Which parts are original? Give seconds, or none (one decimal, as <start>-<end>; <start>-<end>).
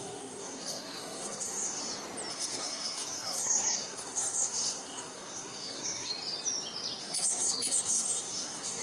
1.8-2.3; 6.1-7.0